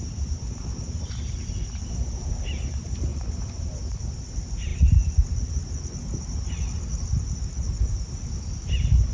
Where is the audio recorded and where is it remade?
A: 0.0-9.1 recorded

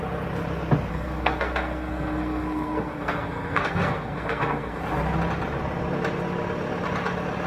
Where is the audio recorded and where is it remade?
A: 0.0-0.9 recorded; 0.9-4.8 remade; 4.8-7.5 recorded

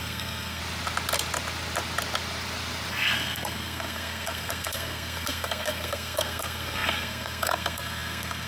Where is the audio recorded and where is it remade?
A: 0.0-0.6 remade; 0.6-2.9 recorded; 2.9-8.5 remade

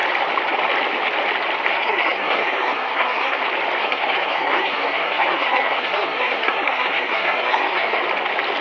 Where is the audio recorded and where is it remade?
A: 0.0-1.7 recorded; 1.7-3.4 remade; 3.4-3.8 recorded; 3.8-8.0 remade; 8.0-8.6 recorded